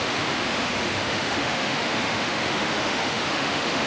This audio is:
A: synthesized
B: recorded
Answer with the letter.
A